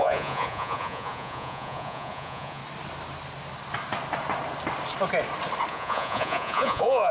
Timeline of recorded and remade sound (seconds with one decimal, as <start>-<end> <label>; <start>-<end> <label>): 0.0-2.6 remade; 2.6-5.7 recorded; 5.7-7.1 remade